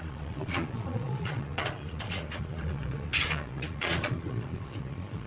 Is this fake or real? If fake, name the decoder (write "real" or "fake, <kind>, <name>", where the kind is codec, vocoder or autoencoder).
fake, vocoder, Vocos